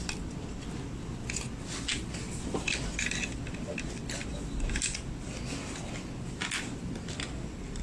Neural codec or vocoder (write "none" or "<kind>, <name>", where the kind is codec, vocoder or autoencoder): none